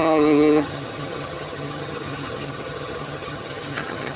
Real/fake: fake